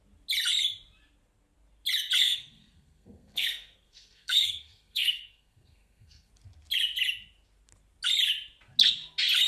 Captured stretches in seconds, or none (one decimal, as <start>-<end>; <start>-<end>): 0.0-2.2; 6.3-9.5